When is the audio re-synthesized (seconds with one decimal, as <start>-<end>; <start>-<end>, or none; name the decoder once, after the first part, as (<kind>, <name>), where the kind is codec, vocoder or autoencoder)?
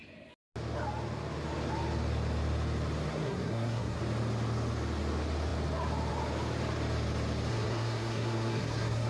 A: 3.1-4.0 (codec, SNAC); 7.5-9.1